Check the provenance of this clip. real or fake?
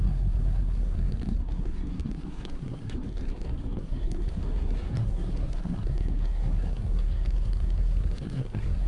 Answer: fake